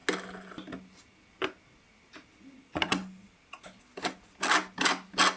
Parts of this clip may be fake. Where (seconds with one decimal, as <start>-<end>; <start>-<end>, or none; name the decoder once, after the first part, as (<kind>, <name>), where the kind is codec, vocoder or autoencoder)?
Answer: 2.6-3.0 (vocoder, WaveNeXt)